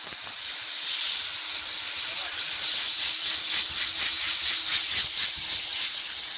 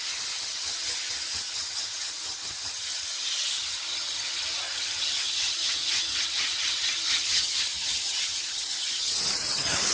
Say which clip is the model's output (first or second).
second